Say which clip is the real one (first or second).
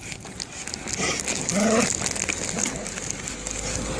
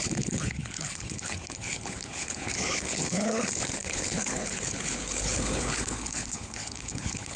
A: first